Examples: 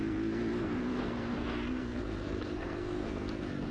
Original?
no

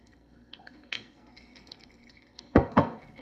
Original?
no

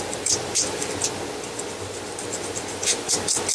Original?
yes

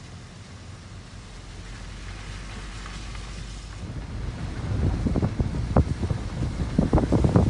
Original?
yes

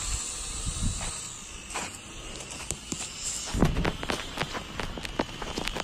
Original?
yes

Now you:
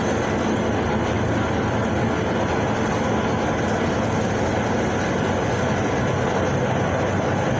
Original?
yes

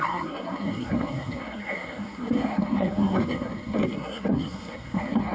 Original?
no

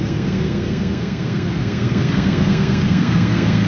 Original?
no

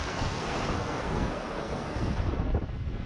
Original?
no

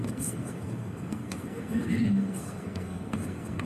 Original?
no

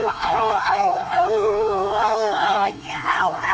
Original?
no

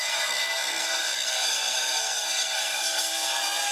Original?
no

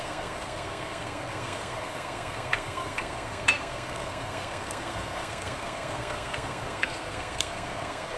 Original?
no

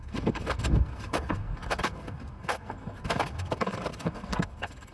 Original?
no